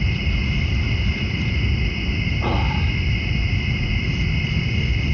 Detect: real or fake real